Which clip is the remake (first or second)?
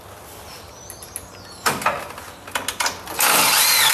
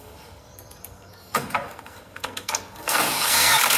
second